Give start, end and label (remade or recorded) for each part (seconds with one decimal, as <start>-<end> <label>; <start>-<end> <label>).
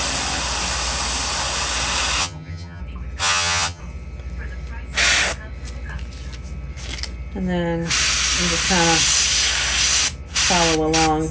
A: 0.0-2.2 recorded; 2.2-2.8 remade; 2.8-3.2 recorded; 3.2-3.8 remade; 3.8-11.3 recorded